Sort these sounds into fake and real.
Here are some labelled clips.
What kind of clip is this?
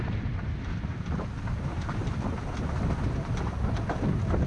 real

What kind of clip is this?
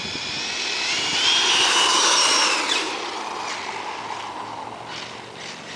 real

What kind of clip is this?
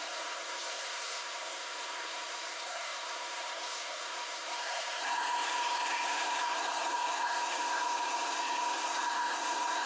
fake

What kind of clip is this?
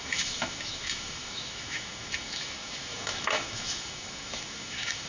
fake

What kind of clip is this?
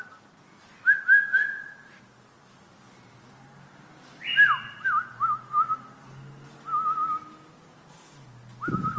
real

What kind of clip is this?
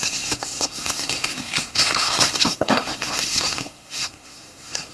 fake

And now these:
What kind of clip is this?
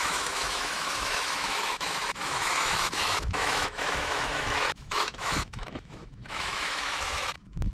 fake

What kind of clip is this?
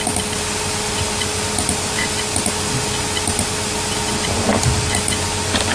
real